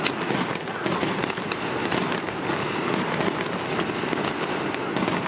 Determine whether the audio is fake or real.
real